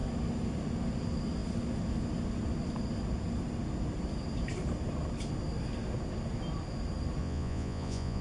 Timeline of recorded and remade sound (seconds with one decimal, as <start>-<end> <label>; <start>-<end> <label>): 0.0-7.2 recorded; 7.2-8.2 remade